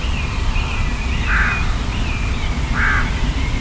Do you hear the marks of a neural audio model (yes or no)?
no